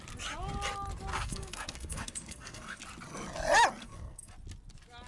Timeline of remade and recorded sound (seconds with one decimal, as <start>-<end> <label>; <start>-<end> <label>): 0.0-1.1 recorded; 1.1-2.8 remade; 2.8-3.8 recorded; 3.8-4.3 remade; 4.3-5.1 recorded